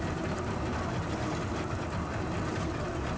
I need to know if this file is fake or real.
real